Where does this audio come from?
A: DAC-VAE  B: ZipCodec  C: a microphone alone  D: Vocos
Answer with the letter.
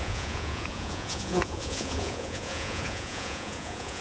D